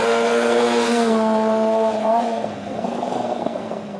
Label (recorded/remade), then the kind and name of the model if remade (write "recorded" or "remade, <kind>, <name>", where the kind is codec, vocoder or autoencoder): remade, codec, SNAC